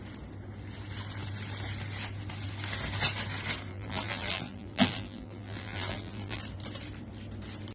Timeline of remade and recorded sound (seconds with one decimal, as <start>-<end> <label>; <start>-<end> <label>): 0.0-3.7 recorded; 3.7-6.4 remade; 6.4-7.7 recorded